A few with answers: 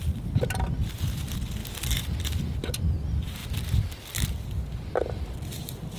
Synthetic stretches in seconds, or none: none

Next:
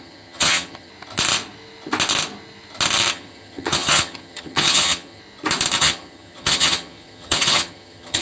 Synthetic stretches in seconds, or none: 0.0-0.9 (vocoder, HiFi-GAN); 3.1-5.2; 5.8-8.2